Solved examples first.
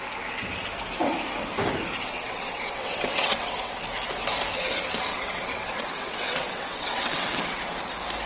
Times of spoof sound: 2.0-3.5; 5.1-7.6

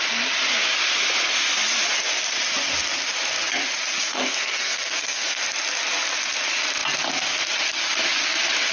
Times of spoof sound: 4.0-5.4

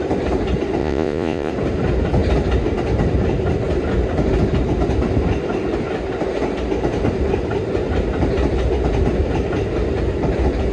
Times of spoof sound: 0.8-1.5

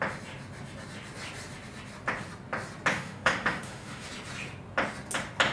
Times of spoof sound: 2.9-4.1

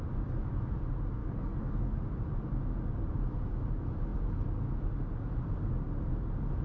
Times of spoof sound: 1.2-2.0